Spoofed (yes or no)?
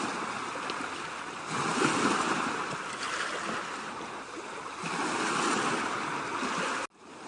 no